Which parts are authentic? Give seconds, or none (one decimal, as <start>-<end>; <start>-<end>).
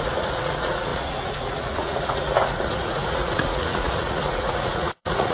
none